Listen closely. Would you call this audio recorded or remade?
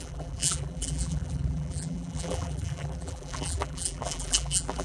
remade